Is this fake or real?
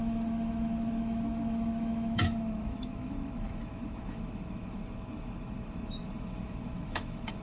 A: fake